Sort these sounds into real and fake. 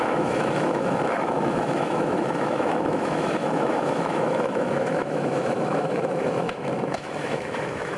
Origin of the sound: fake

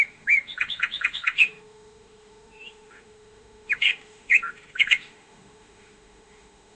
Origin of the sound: fake